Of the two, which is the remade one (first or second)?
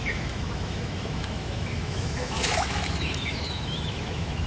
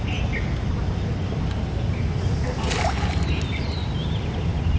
first